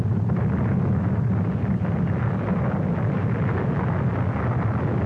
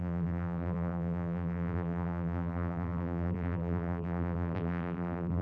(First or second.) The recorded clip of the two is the first